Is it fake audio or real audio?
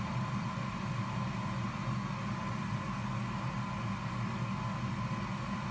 real